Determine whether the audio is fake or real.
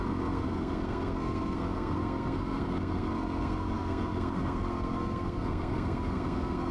fake